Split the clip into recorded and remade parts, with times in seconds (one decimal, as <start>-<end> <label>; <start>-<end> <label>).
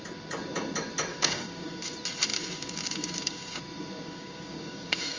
0.0-1.1 recorded; 1.1-1.8 remade; 1.8-2.3 recorded; 2.3-3.6 remade; 3.6-4.1 recorded; 4.1-5.2 remade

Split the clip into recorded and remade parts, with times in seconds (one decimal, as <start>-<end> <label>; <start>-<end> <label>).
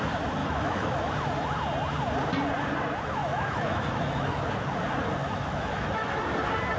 0.0-0.4 recorded; 0.4-1.1 remade; 1.1-3.2 recorded; 3.2-4.4 remade; 4.4-5.2 recorded; 5.2-6.2 remade; 6.2-6.8 recorded